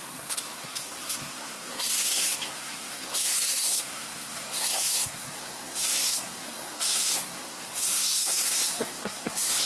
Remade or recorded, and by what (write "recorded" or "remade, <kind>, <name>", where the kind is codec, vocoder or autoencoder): remade, codec, SNAC